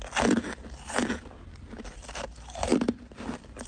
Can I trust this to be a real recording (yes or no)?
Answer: yes